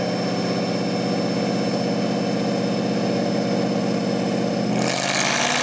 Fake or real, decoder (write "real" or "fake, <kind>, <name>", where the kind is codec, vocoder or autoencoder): real